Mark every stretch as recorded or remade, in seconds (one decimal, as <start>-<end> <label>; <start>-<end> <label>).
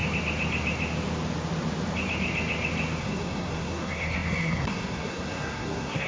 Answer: 0.0-3.0 recorded; 3.0-6.1 remade